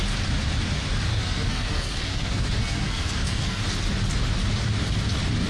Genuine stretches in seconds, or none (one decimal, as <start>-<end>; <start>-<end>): 0.0-1.1; 3.6-5.5